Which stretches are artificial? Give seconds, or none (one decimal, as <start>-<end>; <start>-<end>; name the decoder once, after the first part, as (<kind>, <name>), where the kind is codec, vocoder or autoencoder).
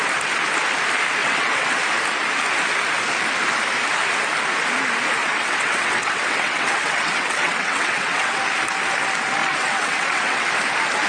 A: 1.2-1.8 (vocoder, WaveNeXt); 5.2-8.4; 9.4-10.5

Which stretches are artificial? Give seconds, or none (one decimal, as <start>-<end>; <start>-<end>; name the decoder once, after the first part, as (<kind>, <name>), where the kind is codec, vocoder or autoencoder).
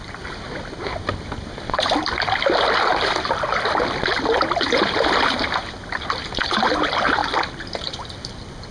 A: none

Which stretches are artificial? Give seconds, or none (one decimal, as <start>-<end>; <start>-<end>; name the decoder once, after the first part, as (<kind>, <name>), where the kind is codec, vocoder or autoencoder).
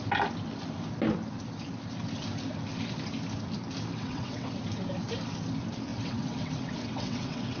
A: 4.0-4.5 (vocoder, WaveNeXt); 5.9-7.6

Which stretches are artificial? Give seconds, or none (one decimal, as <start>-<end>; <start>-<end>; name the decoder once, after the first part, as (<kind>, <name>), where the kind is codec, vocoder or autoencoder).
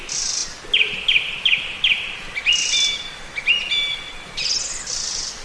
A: none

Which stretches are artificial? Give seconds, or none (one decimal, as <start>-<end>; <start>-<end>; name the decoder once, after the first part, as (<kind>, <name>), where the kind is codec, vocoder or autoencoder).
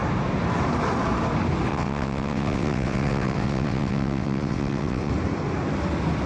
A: 1.7-5.1 (vocoder, WaveNeXt)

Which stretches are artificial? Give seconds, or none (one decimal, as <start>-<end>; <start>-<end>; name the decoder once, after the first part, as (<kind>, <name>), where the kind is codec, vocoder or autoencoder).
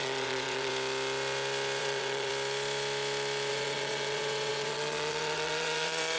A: 0.0-0.7 (vocoder, WaveNeXt); 1.8-2.3; 3.5-6.2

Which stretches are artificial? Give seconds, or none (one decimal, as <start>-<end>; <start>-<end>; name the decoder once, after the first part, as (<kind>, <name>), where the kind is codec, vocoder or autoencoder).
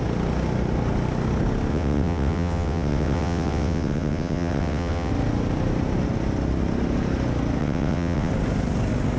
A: 1.7-5.1 (vocoder, WaveNeXt); 7.6-8.3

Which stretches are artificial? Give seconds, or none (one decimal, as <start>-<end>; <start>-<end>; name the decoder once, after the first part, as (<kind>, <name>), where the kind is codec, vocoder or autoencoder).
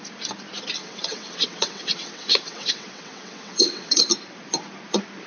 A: 0.8-4.0 (vocoder, WaveNeXt)